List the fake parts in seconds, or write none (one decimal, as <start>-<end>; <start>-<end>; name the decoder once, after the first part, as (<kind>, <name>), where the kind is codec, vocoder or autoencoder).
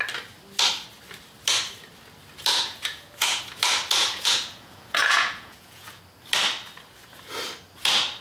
2.5-3.4 (vocoder, Vocos); 4.0-6.0